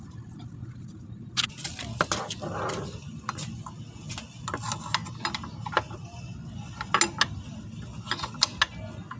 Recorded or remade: recorded